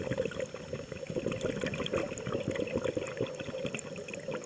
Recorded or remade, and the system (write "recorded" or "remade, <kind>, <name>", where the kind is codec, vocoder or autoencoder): recorded